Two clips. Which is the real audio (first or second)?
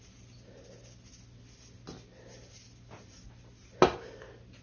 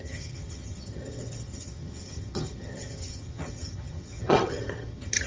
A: first